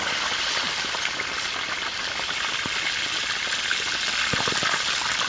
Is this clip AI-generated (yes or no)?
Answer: no